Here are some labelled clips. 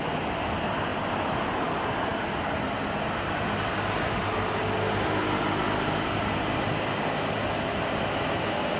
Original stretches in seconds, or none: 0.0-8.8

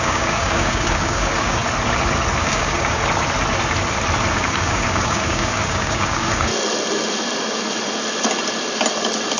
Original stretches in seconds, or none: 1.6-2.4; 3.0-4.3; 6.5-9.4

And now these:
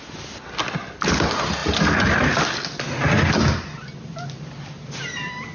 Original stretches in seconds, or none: 0.0-5.5